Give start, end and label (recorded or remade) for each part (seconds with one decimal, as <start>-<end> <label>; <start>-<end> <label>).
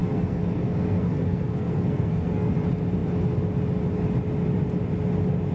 0.0-2.5 remade; 2.5-5.5 recorded